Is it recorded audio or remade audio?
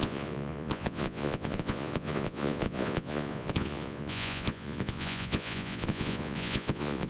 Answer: remade